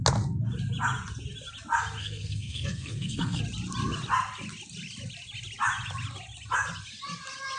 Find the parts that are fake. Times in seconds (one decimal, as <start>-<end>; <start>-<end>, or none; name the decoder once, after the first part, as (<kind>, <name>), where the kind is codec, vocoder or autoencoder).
2.0-3.4 (codec, SNAC)